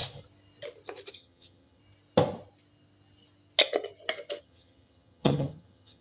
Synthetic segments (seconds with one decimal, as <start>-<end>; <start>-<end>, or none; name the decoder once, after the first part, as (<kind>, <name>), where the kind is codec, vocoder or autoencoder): 1.1-1.8 (vocoder, HiFi-GAN); 4.4-6.0